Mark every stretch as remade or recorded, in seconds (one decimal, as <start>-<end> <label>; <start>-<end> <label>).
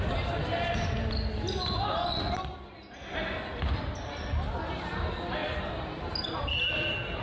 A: 0.0-7.2 recorded